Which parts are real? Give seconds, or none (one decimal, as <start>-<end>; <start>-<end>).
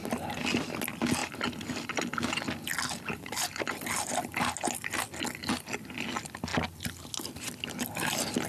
0.0-8.5